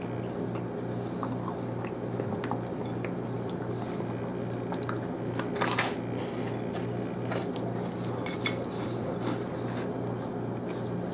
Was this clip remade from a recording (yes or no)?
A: no